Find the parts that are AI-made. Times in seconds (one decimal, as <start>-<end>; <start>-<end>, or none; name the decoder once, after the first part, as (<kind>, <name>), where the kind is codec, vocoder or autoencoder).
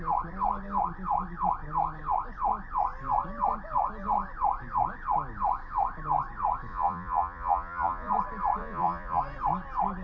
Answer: 6.7-8.1 (vocoder, Vocos); 8.6-9.2